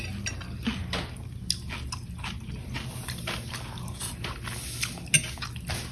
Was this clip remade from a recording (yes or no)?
no